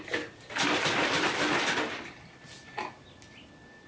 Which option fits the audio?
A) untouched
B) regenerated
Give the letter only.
A